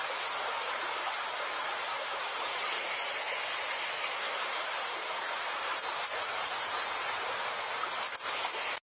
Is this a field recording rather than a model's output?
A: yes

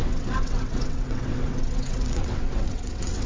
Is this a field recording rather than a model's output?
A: no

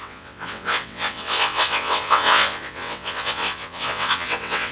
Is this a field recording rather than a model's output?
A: no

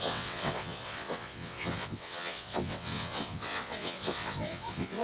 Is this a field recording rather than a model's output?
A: no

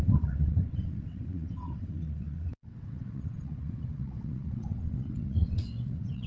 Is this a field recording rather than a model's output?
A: no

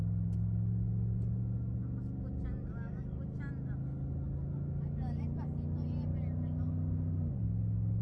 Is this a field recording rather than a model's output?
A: yes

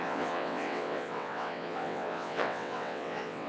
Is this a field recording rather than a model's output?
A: no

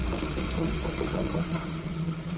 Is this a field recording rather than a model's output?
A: no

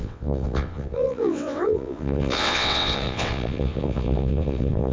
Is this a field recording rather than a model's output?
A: no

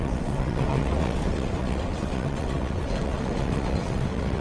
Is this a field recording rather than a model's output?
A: no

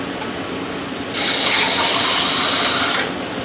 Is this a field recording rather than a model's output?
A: yes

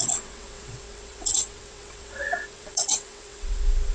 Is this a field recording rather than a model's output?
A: no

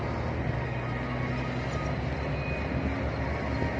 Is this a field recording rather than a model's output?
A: yes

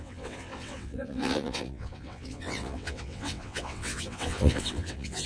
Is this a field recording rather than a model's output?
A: no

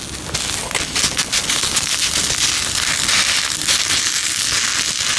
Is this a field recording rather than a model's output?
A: yes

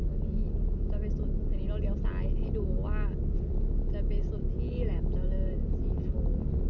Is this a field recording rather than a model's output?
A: yes